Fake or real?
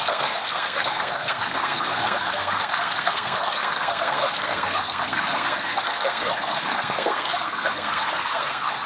fake